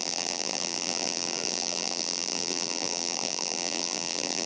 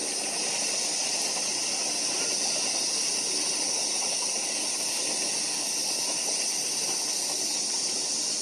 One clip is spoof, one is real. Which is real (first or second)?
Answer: second